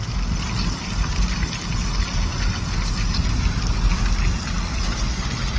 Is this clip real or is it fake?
real